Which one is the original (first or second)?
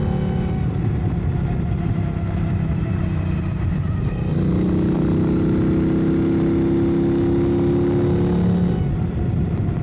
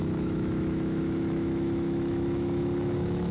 first